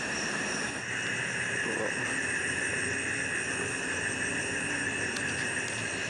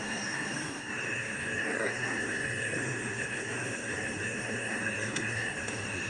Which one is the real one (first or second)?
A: first